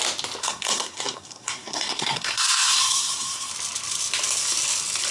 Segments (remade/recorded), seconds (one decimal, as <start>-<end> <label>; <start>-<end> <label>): 0.0-0.4 recorded; 0.4-3.5 remade; 3.5-5.1 recorded